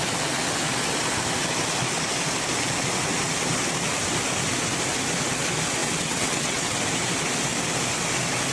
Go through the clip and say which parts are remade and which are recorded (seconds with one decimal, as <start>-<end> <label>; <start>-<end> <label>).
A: 0.0-5.8 recorded; 5.8-6.8 remade; 6.8-8.5 recorded